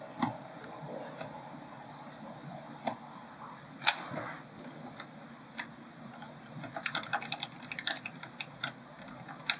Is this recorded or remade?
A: recorded